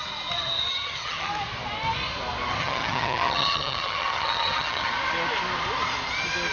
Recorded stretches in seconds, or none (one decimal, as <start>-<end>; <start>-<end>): 0.0-0.7; 1.3-2.6; 4.9-6.5